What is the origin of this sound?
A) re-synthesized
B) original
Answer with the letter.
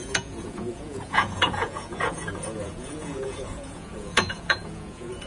A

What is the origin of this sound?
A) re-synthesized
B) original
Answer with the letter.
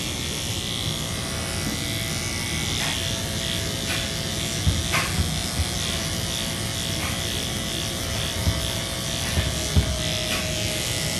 B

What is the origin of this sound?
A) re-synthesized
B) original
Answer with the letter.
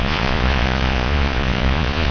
A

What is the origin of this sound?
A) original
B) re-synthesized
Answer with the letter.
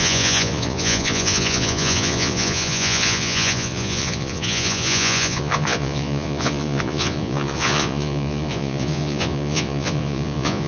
B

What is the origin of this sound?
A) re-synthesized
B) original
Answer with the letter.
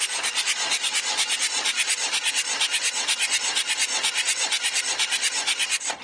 B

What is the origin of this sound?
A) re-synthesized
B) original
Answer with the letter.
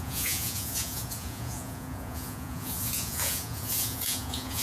A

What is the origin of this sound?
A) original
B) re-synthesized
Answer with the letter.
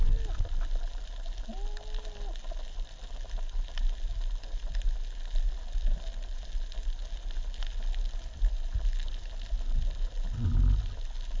A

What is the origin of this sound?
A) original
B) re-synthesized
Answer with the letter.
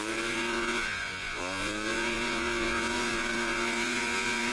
B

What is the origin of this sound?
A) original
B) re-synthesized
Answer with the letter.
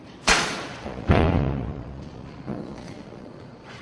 B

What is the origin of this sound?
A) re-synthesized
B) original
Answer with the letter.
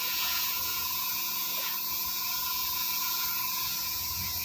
A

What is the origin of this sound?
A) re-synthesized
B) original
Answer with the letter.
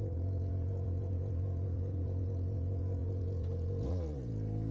A